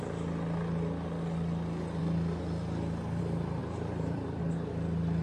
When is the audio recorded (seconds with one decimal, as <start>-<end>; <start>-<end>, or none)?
0.0-3.6; 4.4-5.2